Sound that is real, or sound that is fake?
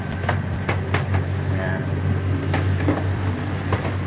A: real